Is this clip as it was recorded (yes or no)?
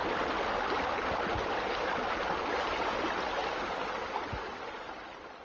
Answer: yes